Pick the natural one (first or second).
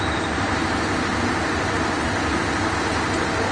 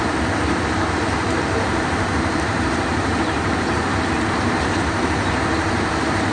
first